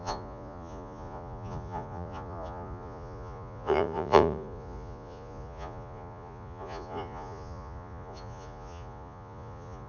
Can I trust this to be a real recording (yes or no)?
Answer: no